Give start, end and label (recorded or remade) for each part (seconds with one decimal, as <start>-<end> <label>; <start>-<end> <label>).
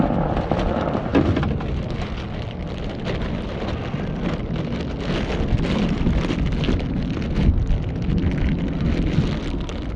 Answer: 0.0-10.0 recorded